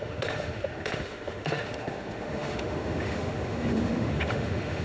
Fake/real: fake